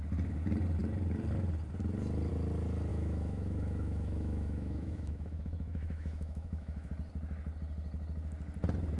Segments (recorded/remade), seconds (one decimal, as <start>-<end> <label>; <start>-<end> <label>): 0.0-2.9 recorded; 2.9-6.9 remade; 6.9-9.0 recorded